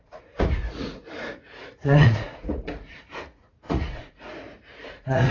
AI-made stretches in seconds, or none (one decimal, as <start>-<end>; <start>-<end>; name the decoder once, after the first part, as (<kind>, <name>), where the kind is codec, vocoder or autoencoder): 0.0-5.3 (vocoder, Vocos)